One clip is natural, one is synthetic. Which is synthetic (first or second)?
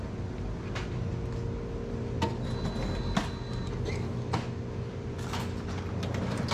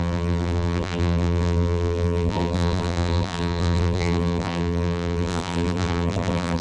second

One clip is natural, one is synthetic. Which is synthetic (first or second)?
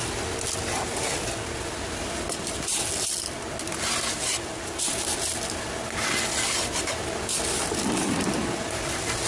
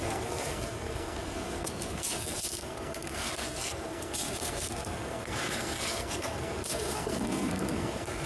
second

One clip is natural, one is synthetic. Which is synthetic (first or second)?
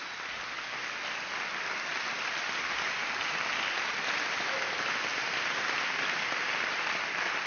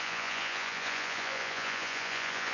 second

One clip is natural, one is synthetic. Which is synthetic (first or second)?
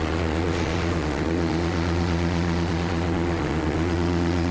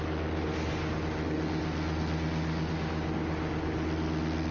first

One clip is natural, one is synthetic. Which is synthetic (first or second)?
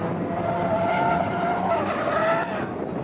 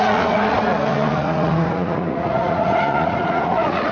second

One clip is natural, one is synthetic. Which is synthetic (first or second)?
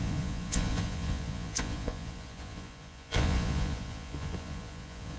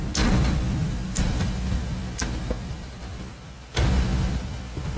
first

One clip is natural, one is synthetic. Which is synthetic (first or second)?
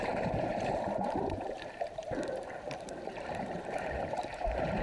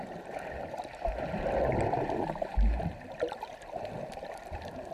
first